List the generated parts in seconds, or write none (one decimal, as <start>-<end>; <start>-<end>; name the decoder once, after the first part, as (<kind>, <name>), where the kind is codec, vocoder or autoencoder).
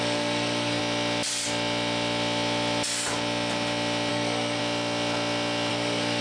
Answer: 0.0-0.8 (codec, SNAC); 4.1-4.6; 5.7-6.2